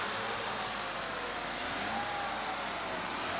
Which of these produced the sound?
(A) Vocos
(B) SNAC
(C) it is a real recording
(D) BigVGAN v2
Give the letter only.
C